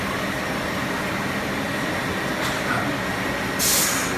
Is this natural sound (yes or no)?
yes